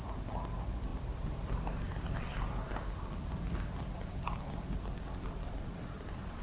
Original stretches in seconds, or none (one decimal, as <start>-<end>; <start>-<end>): 0.0-6.4